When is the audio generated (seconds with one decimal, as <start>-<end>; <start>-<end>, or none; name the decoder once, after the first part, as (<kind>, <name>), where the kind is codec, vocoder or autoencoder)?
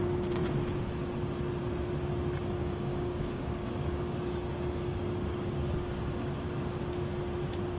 2.6-6.0 (codec, DAC)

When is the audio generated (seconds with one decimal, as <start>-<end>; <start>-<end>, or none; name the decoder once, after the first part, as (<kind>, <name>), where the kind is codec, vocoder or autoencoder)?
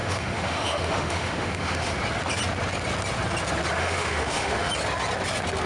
0.0-2.0 (autoencoder, DAC-VAE); 3.8-4.7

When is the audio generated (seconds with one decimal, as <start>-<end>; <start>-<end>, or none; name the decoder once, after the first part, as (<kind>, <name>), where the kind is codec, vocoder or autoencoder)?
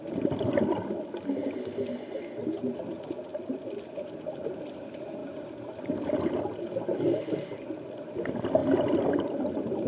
5.2-6.4 (vocoder, BigVGAN v2)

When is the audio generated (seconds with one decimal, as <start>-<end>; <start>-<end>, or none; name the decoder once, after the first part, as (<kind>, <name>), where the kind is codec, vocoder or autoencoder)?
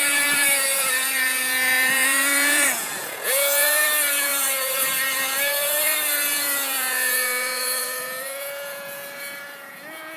0.0-10.2 (vocoder, Vocos)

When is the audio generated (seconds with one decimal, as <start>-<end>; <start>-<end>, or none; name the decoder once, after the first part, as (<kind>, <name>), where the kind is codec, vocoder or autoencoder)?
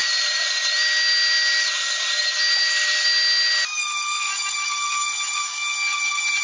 0.0-0.5 (vocoder, BigVGAN v2)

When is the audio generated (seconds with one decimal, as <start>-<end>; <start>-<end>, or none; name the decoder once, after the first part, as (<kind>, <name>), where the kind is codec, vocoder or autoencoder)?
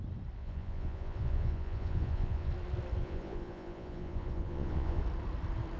0.4-2.5 (vocoder, Vocos); 3.0-5.0